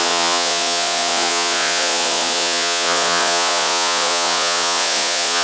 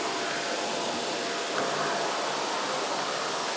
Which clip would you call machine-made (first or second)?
first